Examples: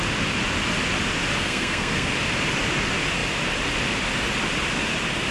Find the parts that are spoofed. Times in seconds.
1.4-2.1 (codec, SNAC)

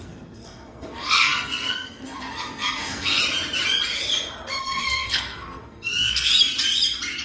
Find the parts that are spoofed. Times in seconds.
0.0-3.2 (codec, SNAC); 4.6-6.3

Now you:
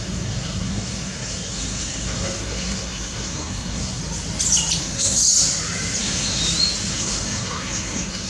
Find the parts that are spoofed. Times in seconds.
0.0-4.0 (codec, SNAC); 4.8-5.2; 6.0-6.4; 6.9-8.3